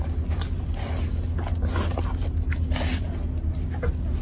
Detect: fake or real real